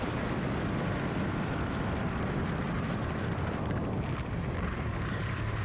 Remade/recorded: remade